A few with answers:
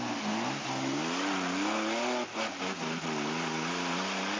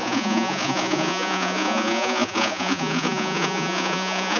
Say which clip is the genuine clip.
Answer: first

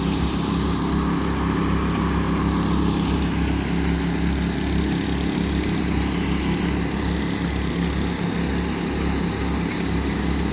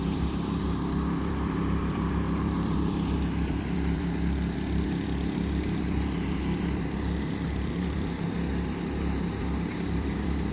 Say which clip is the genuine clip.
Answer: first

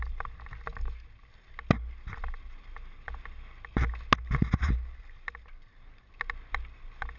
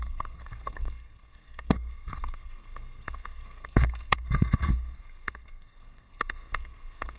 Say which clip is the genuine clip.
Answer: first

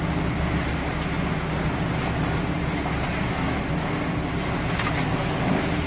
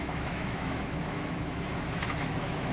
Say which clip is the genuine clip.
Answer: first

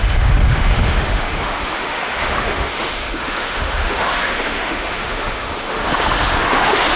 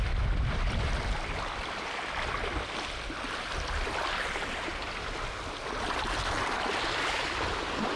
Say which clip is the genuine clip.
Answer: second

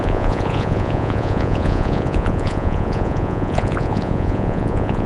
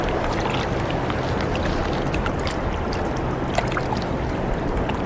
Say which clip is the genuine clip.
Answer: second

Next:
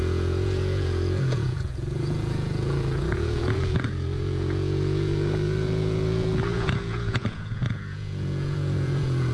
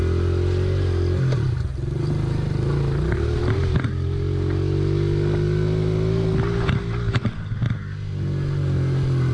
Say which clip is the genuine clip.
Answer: second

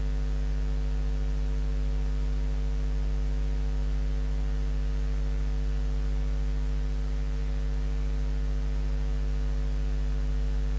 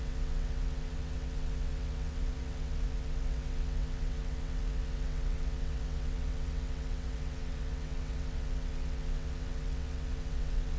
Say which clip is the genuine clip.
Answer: first